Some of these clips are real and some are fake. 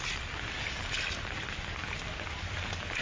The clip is real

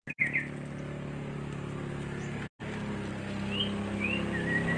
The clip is real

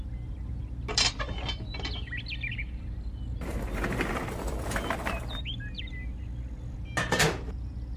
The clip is real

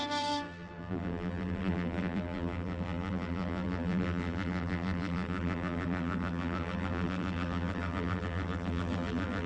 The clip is fake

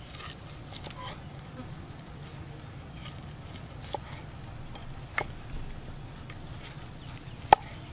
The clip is real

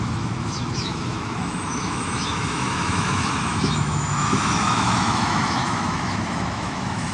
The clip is fake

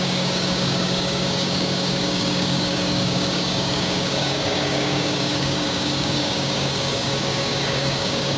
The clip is fake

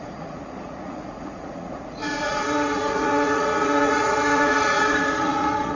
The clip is fake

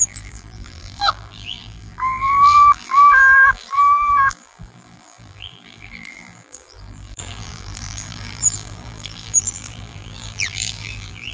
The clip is fake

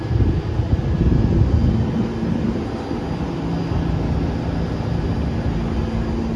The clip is real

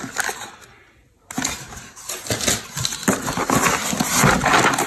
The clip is real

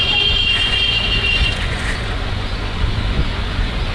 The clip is fake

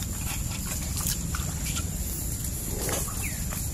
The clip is fake